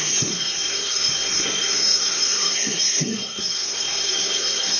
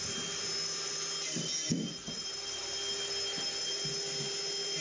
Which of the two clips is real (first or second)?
second